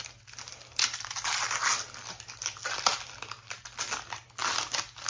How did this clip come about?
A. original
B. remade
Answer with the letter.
A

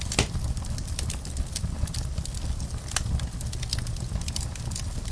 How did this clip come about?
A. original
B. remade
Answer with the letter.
A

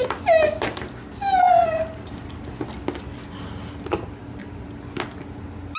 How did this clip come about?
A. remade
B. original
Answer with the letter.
B